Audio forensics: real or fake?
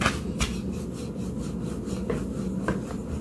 real